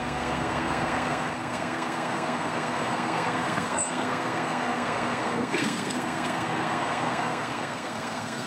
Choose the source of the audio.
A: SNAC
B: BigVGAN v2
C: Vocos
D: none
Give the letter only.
A